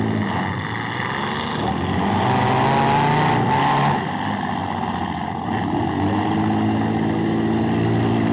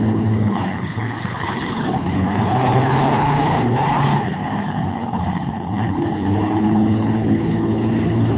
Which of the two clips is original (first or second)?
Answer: first